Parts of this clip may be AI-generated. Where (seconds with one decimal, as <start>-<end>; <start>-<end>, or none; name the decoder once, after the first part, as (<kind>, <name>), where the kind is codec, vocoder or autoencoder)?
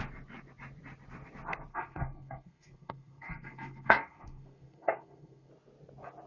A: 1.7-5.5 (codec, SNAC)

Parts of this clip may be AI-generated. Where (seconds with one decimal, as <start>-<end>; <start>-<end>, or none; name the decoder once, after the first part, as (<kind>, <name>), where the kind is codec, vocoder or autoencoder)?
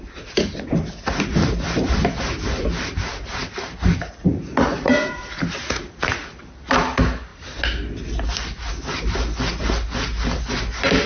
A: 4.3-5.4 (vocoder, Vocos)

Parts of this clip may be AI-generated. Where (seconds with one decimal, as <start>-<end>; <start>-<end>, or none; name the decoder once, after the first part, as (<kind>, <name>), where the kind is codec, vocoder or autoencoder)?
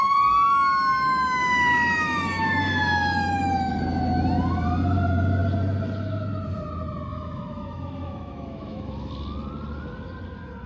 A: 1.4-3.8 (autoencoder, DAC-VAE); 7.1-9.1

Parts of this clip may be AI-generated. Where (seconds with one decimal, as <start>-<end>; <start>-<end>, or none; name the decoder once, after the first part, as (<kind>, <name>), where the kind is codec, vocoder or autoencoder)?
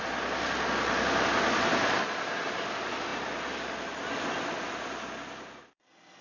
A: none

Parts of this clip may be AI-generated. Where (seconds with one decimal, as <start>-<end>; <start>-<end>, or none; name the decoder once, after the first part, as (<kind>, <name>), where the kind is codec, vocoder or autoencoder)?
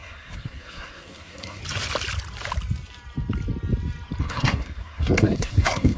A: 0.0-1.6 (codec, SNAC); 4.2-6.0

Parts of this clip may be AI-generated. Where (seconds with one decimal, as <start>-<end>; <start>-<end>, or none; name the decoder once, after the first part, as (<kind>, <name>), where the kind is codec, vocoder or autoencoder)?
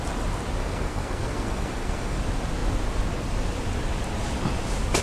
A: 0.6-2.2 (codec, SNAC)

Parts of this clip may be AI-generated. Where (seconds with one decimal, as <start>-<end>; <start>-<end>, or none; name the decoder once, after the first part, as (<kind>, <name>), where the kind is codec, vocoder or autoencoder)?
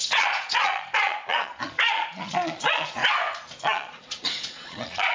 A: 0.0-3.0 (vocoder, Vocos); 3.6-5.1